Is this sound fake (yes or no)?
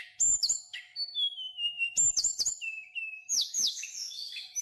yes